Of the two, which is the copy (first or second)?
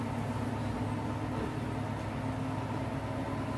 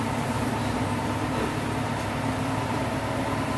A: second